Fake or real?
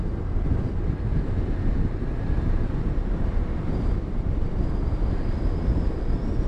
real